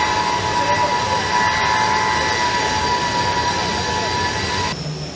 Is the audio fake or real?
real